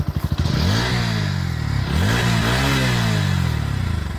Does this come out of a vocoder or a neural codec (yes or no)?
no